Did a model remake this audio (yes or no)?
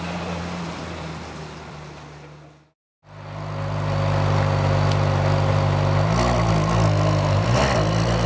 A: no